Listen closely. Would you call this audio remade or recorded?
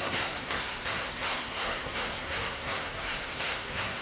remade